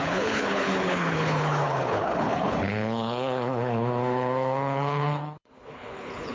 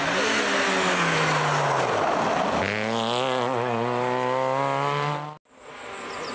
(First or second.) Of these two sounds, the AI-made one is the first